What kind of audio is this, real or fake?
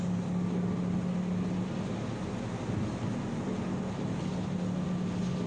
real